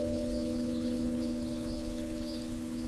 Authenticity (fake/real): fake